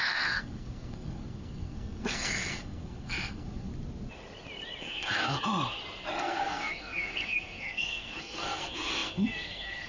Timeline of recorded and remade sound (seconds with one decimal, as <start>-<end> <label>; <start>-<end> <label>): 0.0-3.7 remade; 3.7-4.8 recorded; 4.8-5.4 remade; 5.4-6.2 recorded; 6.2-9.9 remade